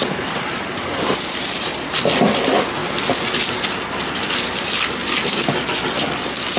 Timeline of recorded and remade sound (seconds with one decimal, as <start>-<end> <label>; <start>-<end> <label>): 0.0-1.5 remade; 1.5-6.6 recorded